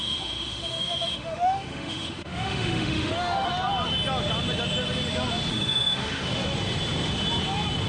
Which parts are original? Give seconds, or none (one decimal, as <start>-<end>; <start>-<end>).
3.5-5.5; 6.3-7.9

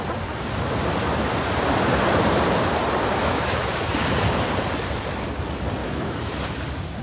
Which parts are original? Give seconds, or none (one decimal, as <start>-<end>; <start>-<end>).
0.0-3.1; 3.7-5.8; 6.4-7.0

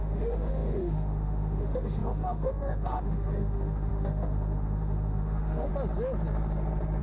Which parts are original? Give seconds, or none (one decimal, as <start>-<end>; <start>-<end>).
5.7-7.0

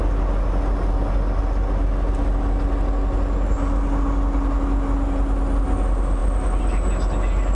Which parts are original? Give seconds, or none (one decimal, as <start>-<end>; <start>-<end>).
0.0-7.5

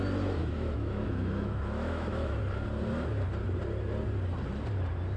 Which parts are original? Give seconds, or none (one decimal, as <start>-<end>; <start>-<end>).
0.0-0.4; 2.4-5.2